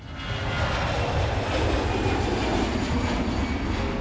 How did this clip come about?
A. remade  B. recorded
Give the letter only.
B